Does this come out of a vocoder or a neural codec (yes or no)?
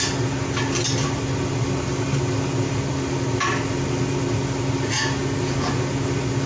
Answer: no